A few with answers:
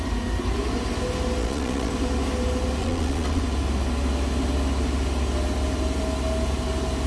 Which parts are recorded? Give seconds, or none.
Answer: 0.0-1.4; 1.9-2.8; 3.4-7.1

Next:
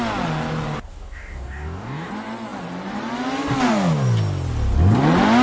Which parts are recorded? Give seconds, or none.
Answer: 0.0-0.9; 2.1-5.4

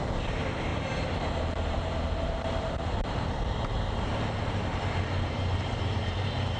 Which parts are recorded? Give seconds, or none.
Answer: none

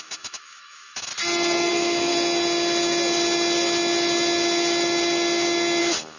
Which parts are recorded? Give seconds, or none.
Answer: 1.1-1.7; 2.1-5.8

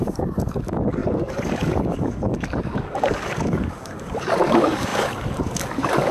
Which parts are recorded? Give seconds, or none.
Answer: none

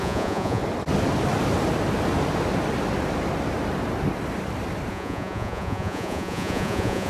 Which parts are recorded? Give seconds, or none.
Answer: 0.6-4.9

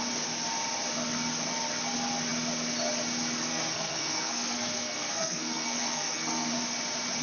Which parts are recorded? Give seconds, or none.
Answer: 0.0-3.5; 6.5-7.2

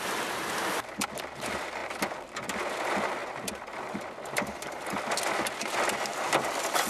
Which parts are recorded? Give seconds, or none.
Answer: 0.0-6.9